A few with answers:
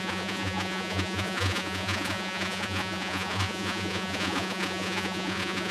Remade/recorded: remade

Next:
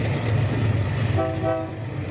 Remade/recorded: recorded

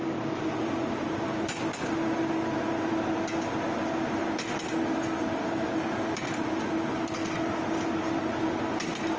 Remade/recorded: recorded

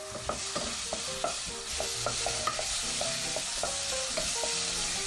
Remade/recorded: recorded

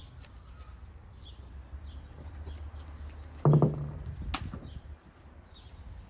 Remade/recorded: recorded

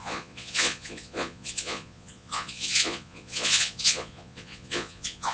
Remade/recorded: remade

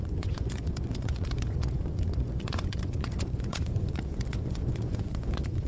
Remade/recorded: remade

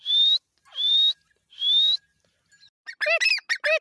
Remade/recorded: recorded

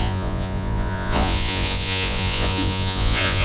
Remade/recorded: remade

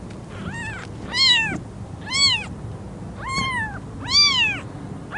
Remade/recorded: recorded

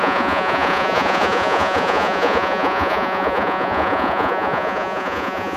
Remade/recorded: remade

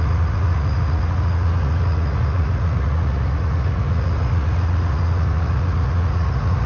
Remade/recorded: remade